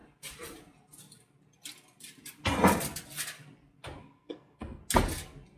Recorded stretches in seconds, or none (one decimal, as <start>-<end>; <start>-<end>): 0.0-4.0; 4.8-5.6